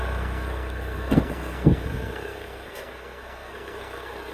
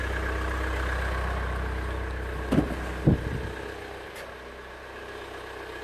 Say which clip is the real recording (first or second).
second